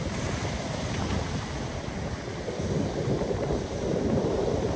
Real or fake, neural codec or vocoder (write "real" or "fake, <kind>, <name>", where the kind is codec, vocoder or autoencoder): real